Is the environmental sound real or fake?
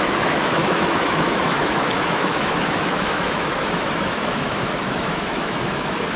fake